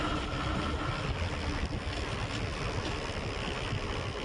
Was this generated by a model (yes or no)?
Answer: no